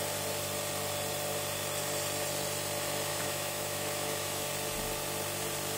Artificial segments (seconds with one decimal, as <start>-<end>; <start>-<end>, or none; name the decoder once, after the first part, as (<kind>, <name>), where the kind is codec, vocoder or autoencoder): 3.1-4.5 (autoencoder, DAC-VAE)